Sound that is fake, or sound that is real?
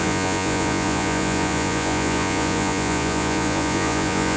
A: fake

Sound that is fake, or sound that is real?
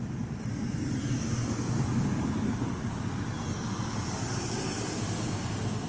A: real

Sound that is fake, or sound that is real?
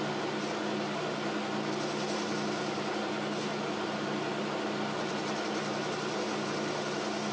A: real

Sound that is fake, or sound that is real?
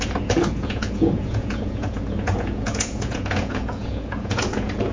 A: fake